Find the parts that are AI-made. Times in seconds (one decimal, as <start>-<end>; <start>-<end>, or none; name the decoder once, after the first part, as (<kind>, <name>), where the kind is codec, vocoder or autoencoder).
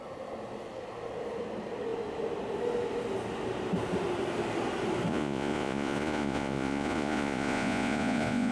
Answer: 5.1-8.5 (vocoder, Vocos)